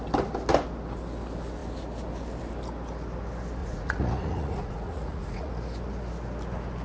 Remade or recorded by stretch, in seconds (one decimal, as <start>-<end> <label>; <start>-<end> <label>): 0.0-3.6 recorded; 3.6-5.5 remade; 5.5-6.8 recorded